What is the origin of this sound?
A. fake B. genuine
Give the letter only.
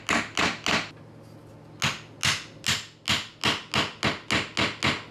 B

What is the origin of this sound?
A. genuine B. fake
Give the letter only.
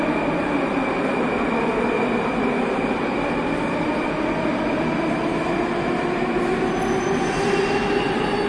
A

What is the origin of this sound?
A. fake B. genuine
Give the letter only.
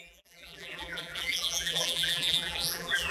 A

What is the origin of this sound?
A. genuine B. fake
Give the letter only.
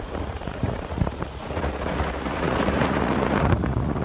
B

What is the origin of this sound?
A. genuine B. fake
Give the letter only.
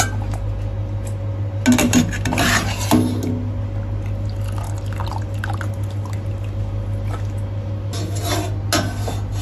A